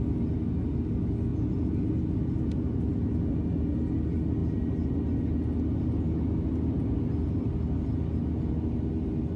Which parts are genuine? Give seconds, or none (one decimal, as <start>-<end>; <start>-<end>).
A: 0.0-1.3; 1.9-9.4